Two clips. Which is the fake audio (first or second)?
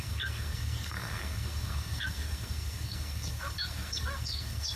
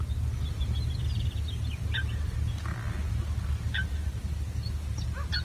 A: first